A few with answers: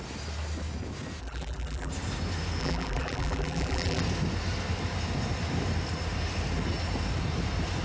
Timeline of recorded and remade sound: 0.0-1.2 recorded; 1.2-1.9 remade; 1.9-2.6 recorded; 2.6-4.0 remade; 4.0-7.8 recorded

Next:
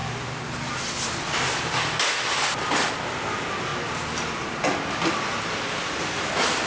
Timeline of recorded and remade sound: 0.0-6.7 recorded

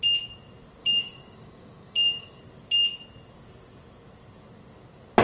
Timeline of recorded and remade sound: 0.0-0.8 recorded; 0.8-2.4 remade; 2.4-5.2 recorded

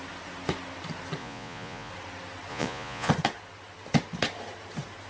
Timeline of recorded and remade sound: 0.0-1.2 recorded; 1.2-1.9 remade; 1.9-2.5 recorded; 2.5-3.1 remade; 3.1-5.1 recorded

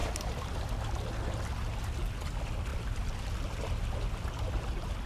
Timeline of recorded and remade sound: 0.0-0.6 remade; 0.6-2.7 recorded; 2.7-5.1 remade

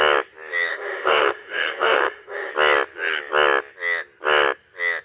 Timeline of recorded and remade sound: 0.0-0.7 recorded; 0.7-2.5 remade; 2.5-5.0 recorded

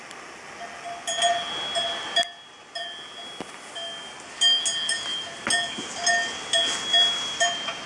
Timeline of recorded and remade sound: 0.0-7.9 recorded

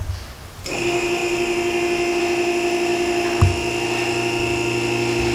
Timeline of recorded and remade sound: 0.0-5.3 recorded